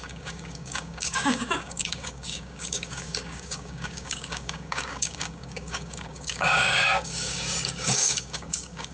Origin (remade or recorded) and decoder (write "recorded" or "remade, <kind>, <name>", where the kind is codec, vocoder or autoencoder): remade, codec, DAC